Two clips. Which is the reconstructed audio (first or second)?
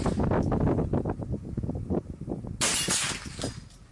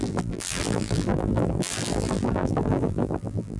second